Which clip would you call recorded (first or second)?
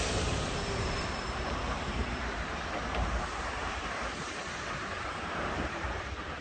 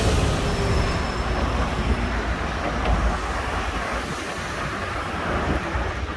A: second